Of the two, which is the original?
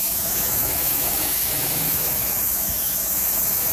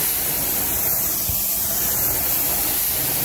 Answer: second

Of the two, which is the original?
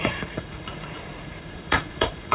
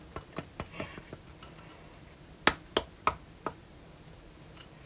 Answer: second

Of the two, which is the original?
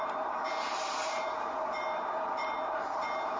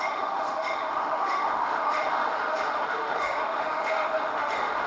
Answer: first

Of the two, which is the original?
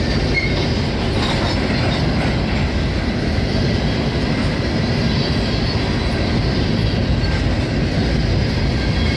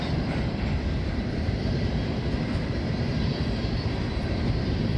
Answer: first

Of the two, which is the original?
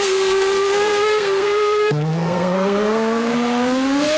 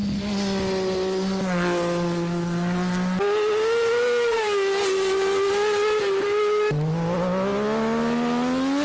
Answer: second